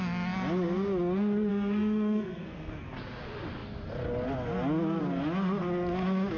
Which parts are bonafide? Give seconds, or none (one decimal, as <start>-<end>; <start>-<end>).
0.0-1.5; 2.7-6.4